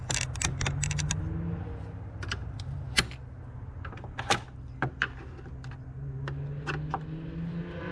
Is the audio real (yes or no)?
yes